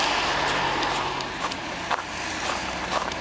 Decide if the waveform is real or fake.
real